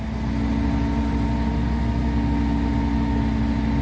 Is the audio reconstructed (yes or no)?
no